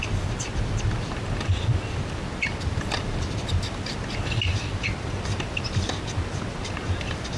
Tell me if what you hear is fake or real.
real